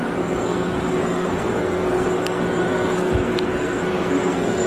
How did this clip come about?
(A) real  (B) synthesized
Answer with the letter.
B